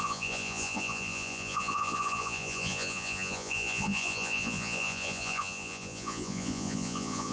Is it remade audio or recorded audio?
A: remade